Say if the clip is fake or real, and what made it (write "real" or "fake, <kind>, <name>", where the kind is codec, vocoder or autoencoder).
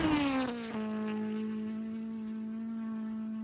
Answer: real